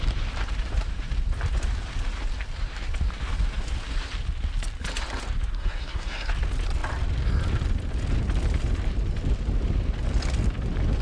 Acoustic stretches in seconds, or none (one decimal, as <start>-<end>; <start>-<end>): 0.0-5.5; 6.3-11.0